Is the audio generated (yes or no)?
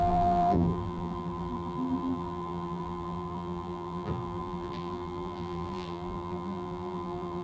yes